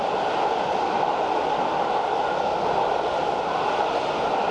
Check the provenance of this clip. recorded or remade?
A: recorded